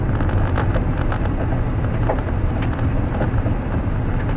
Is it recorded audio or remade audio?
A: recorded